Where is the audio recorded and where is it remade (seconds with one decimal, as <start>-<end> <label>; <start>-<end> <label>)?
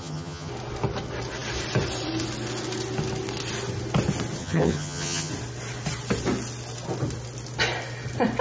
0.0-0.5 remade; 0.5-4.4 recorded; 4.4-5.3 remade; 5.3-8.4 recorded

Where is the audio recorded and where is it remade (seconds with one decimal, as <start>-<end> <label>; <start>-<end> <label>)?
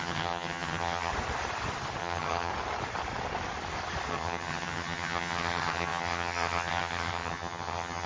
0.0-1.1 remade; 1.1-2.0 recorded; 2.0-2.5 remade; 2.5-4.1 recorded; 4.1-8.1 remade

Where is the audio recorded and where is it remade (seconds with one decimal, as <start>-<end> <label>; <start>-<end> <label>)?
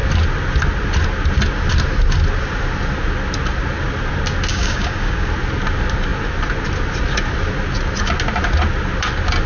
0.0-4.5 recorded; 4.5-5.3 remade; 5.3-9.5 recorded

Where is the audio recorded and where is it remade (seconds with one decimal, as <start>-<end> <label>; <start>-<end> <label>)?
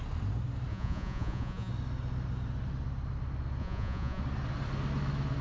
0.0-0.7 recorded; 0.7-1.7 remade; 1.7-3.6 recorded; 3.6-4.2 remade; 4.2-5.4 recorded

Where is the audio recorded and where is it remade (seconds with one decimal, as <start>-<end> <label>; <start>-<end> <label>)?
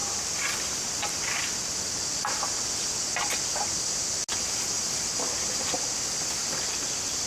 0.0-7.3 recorded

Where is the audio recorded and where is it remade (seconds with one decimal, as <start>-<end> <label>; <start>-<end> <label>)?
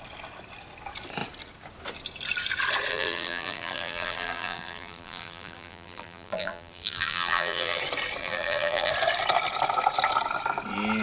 0.0-2.9 recorded; 2.9-7.8 remade; 7.8-8.2 recorded; 8.2-8.9 remade; 8.9-11.0 recorded